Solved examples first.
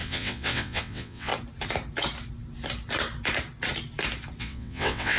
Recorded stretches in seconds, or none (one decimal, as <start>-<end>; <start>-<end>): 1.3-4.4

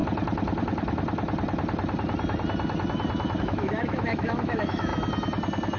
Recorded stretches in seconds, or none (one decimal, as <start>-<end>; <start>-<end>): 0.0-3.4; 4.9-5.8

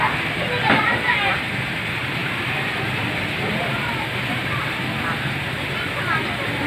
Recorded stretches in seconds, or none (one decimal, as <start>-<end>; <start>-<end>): 0.0-2.2; 5.0-6.7

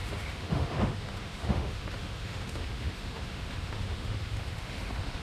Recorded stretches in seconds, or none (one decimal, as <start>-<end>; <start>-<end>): none

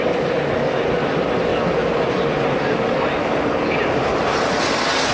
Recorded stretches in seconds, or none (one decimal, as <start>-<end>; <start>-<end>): 0.0-5.1

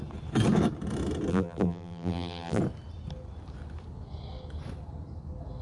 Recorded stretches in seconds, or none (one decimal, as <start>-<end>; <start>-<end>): 0.0-1.3; 2.6-5.6